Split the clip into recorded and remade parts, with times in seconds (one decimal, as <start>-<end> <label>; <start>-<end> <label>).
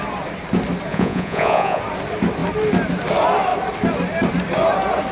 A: 0.0-0.9 recorded; 0.9-1.8 remade; 1.8-5.1 recorded